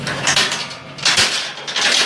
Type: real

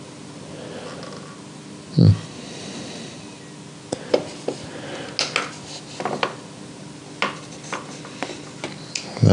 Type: real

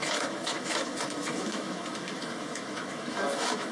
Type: fake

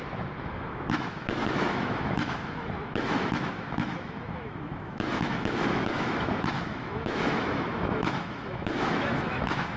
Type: fake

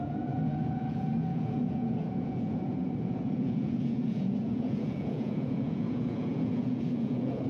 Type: fake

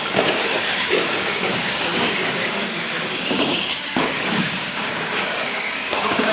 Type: fake